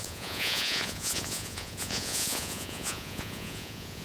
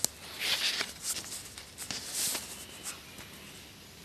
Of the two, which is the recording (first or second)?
second